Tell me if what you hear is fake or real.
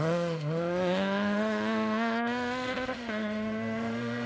fake